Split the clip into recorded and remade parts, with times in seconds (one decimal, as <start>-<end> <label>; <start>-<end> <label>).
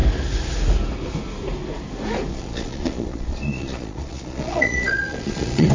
0.0-2.3 recorded; 2.3-5.7 remade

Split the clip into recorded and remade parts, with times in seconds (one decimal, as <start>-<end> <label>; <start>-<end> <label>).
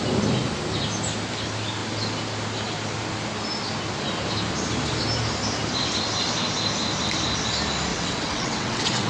0.0-7.9 recorded; 7.9-9.1 remade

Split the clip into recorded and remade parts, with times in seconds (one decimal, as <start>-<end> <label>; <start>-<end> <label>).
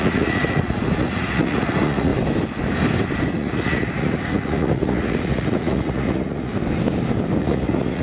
0.0-2.1 remade; 2.1-3.3 recorded; 3.3-6.5 remade; 6.5-7.4 recorded; 7.4-8.0 remade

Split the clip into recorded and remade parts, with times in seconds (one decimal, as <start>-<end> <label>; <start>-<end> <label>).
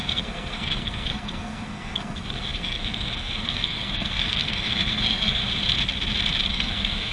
0.0-5.4 remade; 5.4-6.5 recorded; 6.5-7.1 remade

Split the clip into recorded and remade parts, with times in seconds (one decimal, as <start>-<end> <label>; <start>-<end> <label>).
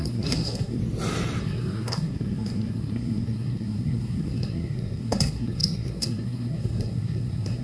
0.0-0.8 remade; 0.8-1.4 recorded; 1.4-7.6 remade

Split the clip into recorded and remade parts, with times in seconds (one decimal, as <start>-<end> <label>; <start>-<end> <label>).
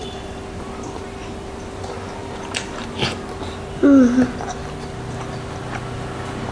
0.0-6.5 recorded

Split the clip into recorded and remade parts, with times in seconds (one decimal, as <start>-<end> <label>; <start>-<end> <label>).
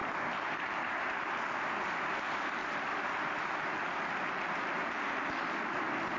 0.0-0.7 remade; 0.7-6.2 recorded